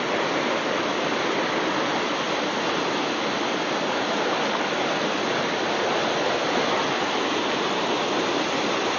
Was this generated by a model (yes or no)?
no